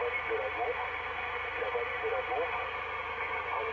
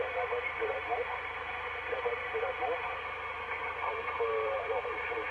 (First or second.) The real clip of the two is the first